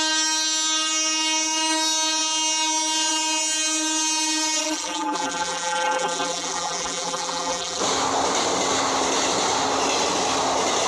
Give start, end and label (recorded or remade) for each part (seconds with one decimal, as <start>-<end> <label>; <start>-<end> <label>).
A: 0.0-4.6 recorded; 4.6-7.8 remade; 7.8-10.9 recorded